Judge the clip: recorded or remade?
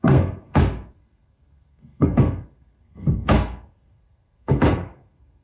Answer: remade